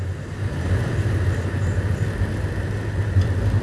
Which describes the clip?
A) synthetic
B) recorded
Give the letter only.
B